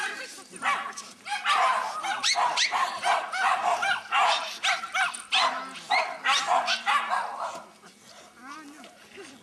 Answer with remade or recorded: recorded